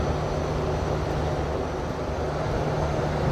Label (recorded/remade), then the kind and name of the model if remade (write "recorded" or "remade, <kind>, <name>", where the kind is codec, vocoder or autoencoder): recorded